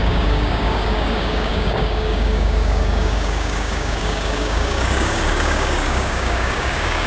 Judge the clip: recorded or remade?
remade